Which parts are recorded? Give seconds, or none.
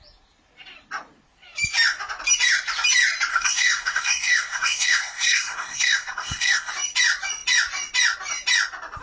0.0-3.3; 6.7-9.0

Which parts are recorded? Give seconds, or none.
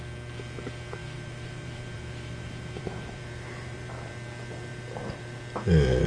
0.0-1.0; 4.1-4.7; 5.4-6.1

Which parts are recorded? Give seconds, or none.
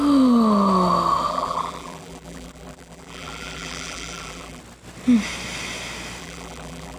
0.0-1.3; 4.6-6.2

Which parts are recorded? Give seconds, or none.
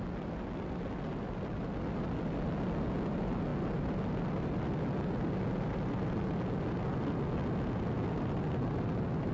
0.0-9.3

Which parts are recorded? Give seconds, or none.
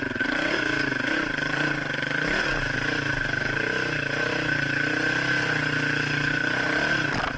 0.0-0.4; 0.9-7.4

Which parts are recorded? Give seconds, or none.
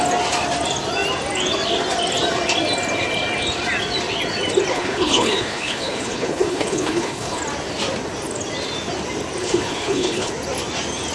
0.0-4.7; 7.4-9.4; 10.3-11.1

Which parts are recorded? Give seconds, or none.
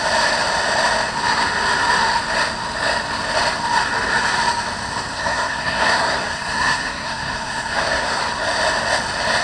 0.0-5.1; 8.2-9.4